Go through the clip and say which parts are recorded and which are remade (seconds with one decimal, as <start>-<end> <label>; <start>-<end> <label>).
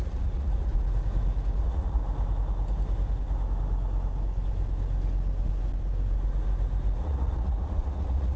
0.0-0.7 remade; 0.7-1.6 recorded; 1.6-2.0 remade; 2.0-7.0 recorded; 7.0-8.4 remade